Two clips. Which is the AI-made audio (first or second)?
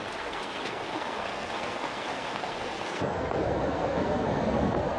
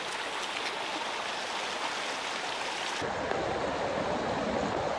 first